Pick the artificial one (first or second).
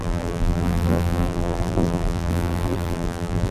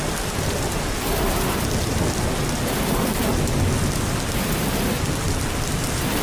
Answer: first